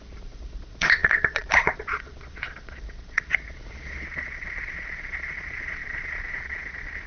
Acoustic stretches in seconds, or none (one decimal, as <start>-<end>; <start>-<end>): none